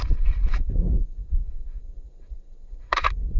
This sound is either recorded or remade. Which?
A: remade